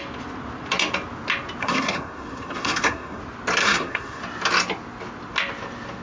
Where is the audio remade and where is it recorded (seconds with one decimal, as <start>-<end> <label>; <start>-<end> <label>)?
0.0-1.6 recorded; 1.6-3.2 remade; 3.2-3.6 recorded; 3.6-4.2 remade; 4.2-6.0 recorded